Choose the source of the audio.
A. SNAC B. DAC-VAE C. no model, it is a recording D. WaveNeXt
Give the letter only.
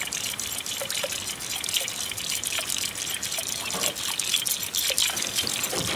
C